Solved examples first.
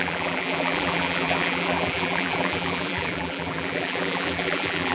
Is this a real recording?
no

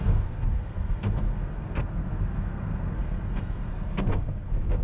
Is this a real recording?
no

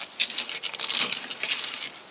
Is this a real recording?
yes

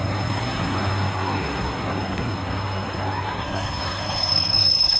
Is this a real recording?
no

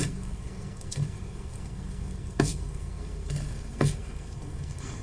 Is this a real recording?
no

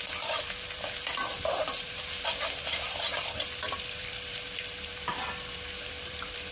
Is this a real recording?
no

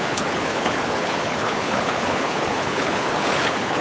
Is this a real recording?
no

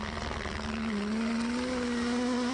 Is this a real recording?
yes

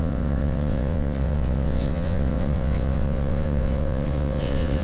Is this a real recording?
no